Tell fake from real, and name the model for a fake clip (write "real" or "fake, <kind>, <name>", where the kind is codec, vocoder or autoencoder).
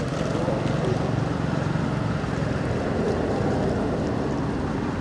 real